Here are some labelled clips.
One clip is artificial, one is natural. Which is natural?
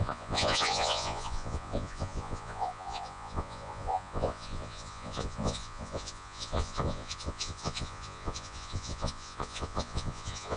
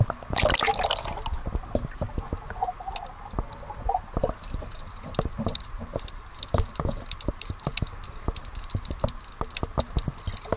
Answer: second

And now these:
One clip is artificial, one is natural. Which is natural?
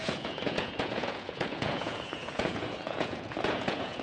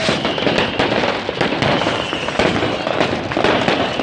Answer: second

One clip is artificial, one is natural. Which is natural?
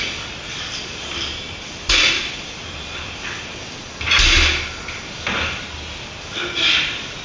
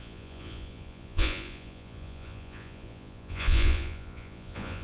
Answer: first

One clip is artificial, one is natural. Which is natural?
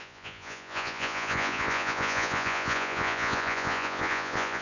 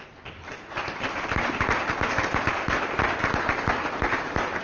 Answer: second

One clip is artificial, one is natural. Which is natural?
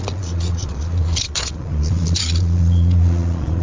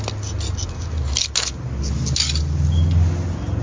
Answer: second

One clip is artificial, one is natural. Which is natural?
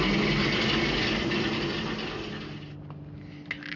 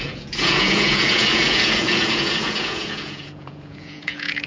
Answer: first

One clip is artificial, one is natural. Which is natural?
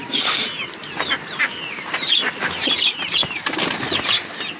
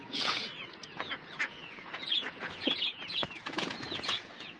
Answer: first